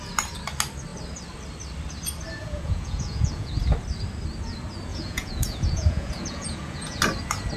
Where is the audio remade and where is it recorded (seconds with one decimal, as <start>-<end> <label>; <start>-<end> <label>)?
0.0-2.4 recorded; 2.4-3.5 remade; 3.5-4.9 recorded; 4.9-7.0 remade; 7.0-7.6 recorded